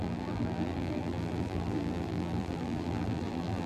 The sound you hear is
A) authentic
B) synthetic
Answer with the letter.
B